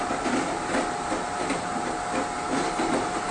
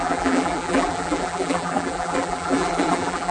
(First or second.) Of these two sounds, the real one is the first